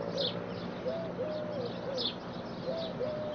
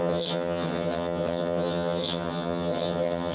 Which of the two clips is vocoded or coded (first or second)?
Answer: second